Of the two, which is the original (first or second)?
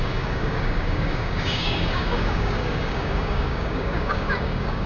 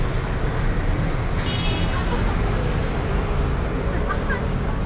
second